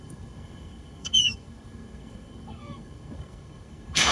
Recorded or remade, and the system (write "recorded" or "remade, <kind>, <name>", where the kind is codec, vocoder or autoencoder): remade, codec, SNAC